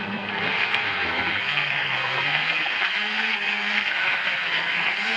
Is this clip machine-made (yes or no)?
yes